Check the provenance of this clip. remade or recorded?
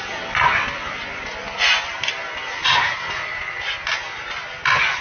recorded